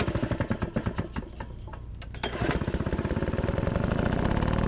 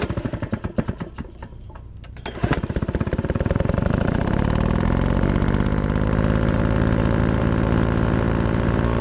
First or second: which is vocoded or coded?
second